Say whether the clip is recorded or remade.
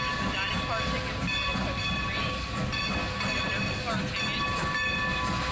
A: recorded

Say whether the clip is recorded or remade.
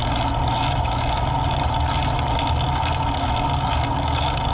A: recorded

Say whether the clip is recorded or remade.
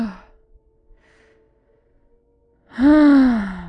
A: recorded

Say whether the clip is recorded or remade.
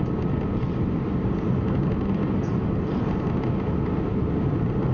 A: recorded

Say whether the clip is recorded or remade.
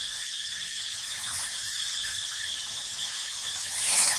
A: remade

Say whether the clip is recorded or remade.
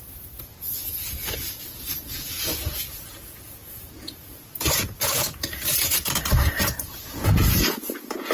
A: remade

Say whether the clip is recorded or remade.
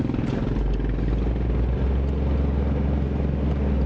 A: recorded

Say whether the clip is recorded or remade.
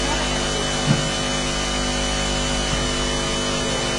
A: recorded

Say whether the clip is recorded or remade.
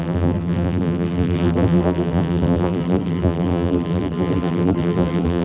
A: remade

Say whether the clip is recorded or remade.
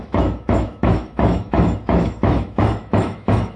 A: remade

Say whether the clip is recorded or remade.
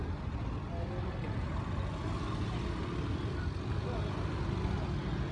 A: recorded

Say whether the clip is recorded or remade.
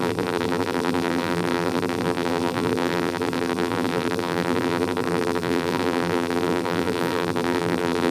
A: remade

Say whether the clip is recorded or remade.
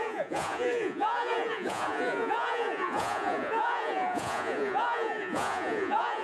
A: remade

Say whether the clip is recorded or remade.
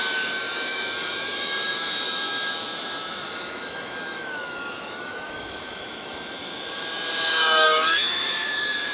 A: remade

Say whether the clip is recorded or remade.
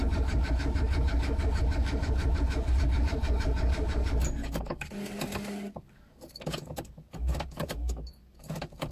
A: remade